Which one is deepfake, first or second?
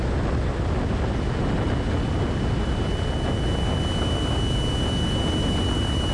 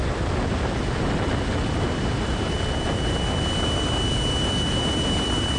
second